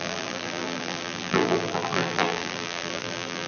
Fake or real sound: fake